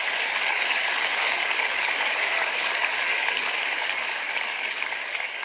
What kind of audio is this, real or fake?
fake